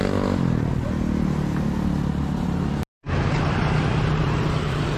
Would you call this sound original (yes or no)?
yes